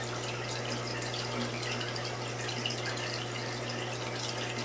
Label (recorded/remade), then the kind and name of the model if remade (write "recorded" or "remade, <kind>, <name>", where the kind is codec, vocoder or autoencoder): recorded